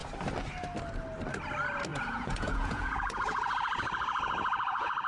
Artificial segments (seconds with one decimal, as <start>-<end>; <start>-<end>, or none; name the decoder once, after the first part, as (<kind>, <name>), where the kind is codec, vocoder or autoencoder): 1.9-5.1 (vocoder, Vocos)